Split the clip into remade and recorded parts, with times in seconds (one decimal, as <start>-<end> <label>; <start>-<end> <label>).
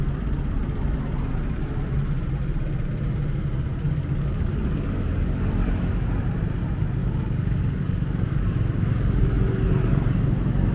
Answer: 0.0-3.7 recorded; 3.7-6.1 remade; 6.1-7.0 recorded; 7.0-8.4 remade; 8.4-10.7 recorded